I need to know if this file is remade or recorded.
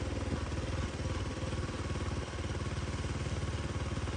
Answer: recorded